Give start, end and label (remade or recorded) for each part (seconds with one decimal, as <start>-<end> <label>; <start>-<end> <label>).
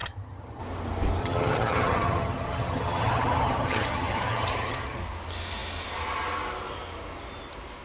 0.0-0.6 remade; 0.6-1.2 recorded; 1.2-5.0 remade; 5.0-7.8 recorded